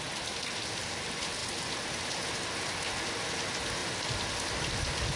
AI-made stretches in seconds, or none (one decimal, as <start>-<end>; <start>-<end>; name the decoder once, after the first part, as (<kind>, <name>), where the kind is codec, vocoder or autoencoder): none